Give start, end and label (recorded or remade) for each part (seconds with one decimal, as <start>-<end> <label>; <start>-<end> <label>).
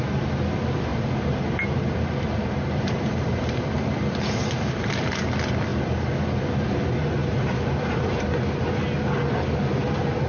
0.0-0.9 recorded; 0.9-5.3 remade; 5.3-7.2 recorded; 7.2-8.1 remade; 8.1-10.3 recorded